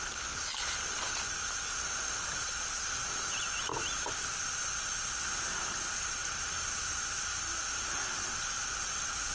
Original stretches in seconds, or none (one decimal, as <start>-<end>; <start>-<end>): 0.0-9.3